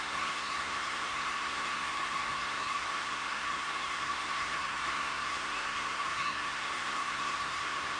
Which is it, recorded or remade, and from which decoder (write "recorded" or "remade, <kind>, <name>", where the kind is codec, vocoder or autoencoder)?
remade, codec, SNAC